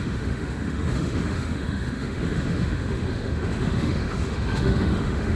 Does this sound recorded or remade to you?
remade